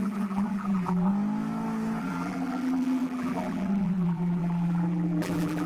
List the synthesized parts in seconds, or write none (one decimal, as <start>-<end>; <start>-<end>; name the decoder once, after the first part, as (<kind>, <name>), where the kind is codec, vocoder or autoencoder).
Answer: 0.0-1.1 (vocoder, BigVGAN v2); 2.0-5.7